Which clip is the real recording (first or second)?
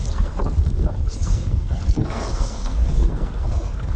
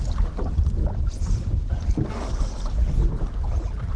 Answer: second